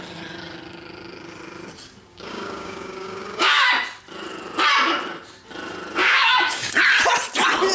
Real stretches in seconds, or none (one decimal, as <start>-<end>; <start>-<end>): 0.0-2.1; 3.7-6.0; 6.8-7.7